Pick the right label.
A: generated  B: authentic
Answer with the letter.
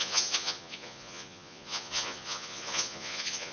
A